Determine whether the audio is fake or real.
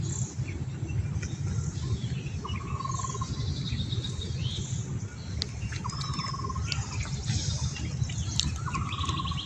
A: real